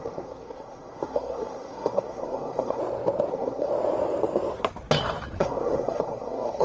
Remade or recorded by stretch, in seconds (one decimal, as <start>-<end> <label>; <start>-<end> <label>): 0.0-2.8 remade; 2.8-3.3 recorded; 3.3-3.7 remade; 3.7-5.4 recorded; 5.4-6.6 remade